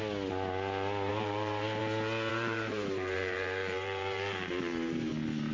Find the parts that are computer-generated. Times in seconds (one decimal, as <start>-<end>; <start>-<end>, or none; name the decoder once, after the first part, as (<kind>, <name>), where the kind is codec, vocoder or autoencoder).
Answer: 1.1-1.8 (vocoder, BigVGAN v2); 2.3-5.1